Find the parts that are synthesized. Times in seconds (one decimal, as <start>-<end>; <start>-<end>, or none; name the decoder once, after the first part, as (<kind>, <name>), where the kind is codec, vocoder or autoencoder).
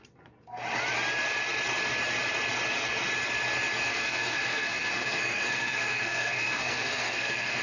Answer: 3.9-7.6 (codec, SNAC)